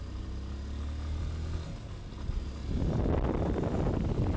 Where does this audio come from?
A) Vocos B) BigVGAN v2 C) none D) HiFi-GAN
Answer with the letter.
C